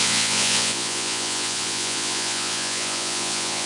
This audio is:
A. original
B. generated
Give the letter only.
B